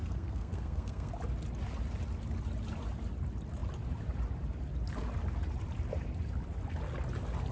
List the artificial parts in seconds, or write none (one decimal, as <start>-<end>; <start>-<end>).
0.0-1.1